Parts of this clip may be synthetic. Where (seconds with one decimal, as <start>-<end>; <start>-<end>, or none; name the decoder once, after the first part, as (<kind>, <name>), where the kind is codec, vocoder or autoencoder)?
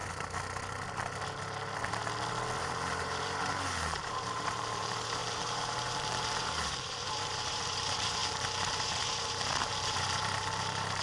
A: 2.6-11.0 (vocoder, BigVGAN v2)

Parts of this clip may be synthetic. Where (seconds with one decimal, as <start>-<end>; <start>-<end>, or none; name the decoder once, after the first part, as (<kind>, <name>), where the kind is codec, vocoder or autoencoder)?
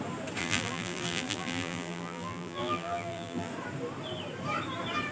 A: 0.4-3.5 (vocoder, BigVGAN v2)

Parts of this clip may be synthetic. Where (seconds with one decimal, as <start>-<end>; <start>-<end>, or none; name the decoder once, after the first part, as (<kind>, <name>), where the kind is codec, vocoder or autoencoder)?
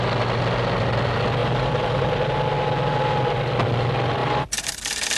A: 1.4-2.1 (vocoder, BigVGAN v2); 4.2-5.2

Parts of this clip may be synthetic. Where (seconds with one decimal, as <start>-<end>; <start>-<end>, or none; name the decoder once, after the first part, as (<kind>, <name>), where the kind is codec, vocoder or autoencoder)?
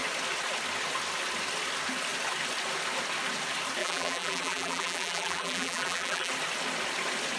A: 3.8-6.3 (vocoder, BigVGAN v2)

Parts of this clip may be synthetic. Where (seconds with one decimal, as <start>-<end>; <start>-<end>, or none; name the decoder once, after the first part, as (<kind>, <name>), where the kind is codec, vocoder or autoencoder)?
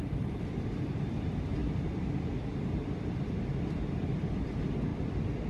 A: 0.0-1.6 (vocoder, BigVGAN v2); 3.6-5.5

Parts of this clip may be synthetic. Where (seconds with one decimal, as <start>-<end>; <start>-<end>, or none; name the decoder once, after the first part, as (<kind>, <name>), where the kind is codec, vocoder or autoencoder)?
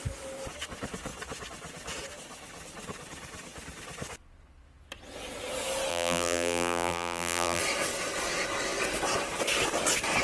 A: 5.9-7.6 (vocoder, BigVGAN v2)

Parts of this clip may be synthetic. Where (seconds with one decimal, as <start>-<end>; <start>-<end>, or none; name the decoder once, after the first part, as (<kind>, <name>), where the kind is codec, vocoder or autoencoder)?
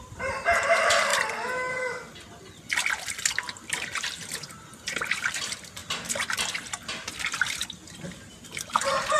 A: 0.0-1.1 (vocoder, BigVGAN v2); 3.6-5.8; 8.1-9.2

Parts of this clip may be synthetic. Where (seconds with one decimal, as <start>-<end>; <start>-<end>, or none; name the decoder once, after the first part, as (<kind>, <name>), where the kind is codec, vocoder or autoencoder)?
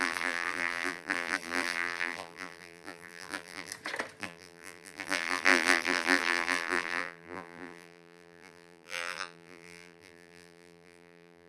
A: 0.0-3.7 (vocoder, BigVGAN v2); 4.2-11.5